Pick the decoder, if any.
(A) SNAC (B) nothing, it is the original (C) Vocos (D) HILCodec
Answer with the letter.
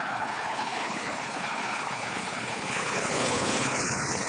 D